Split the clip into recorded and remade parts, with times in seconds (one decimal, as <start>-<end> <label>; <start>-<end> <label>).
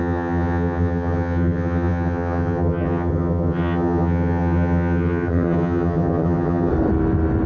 0.0-6.7 remade; 6.7-7.5 recorded